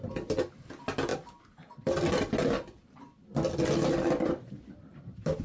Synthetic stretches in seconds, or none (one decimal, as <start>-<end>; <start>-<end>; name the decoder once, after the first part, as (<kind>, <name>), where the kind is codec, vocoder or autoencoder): none